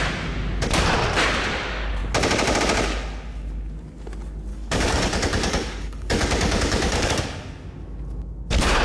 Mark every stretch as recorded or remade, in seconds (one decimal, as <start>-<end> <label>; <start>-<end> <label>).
0.0-4.5 recorded; 4.5-7.2 remade; 7.2-8.8 recorded